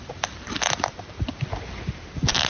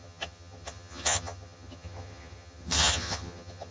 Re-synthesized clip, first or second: second